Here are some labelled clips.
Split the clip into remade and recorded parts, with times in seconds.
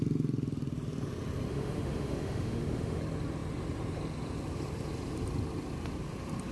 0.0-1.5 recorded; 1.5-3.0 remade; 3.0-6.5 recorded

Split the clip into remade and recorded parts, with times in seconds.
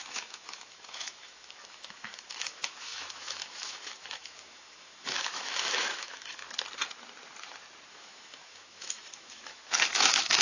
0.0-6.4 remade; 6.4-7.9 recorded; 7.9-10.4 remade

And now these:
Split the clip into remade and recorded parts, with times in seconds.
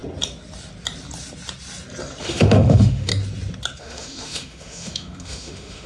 0.0-2.2 recorded; 2.2-3.1 remade; 3.1-3.8 recorded; 3.8-5.9 remade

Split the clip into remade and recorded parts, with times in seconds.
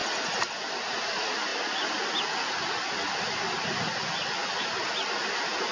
0.0-5.7 recorded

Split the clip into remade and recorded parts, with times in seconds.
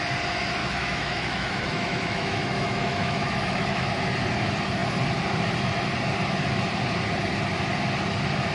0.0-0.6 recorded; 0.6-3.9 remade; 3.9-8.5 recorded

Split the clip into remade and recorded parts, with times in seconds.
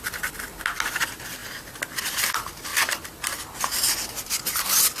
0.0-5.0 recorded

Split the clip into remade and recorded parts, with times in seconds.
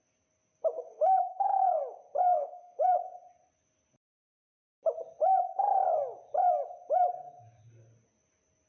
0.0-0.9 recorded; 0.9-1.8 remade; 1.8-2.3 recorded; 2.3-3.0 remade; 3.0-8.7 recorded